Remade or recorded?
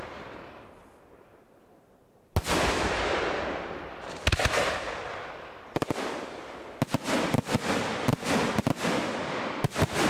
recorded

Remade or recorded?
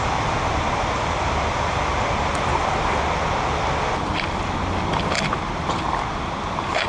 recorded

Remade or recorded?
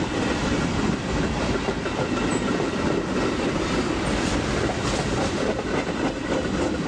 remade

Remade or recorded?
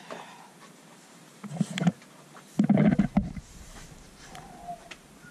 remade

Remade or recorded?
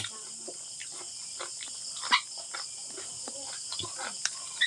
recorded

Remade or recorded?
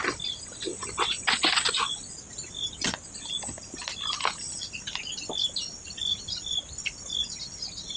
recorded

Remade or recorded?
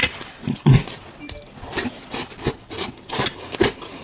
remade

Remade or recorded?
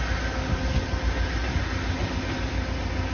recorded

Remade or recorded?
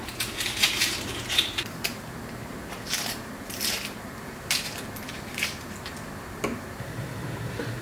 remade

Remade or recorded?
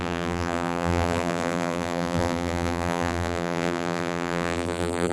remade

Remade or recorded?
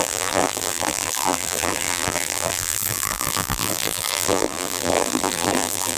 remade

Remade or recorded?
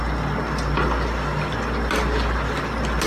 recorded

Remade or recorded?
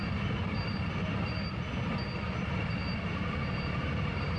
recorded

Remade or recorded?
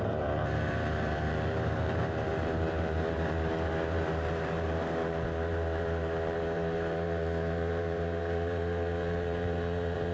remade